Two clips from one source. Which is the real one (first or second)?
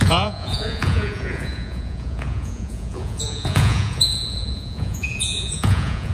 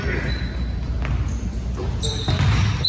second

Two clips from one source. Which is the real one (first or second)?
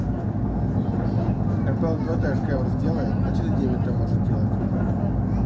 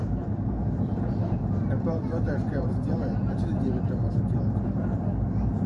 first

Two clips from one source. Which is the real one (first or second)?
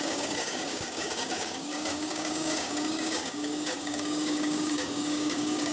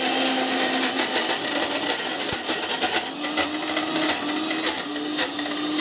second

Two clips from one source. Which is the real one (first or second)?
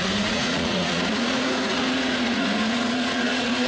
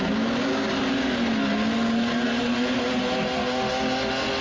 second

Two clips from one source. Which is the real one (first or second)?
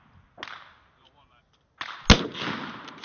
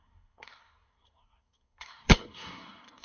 first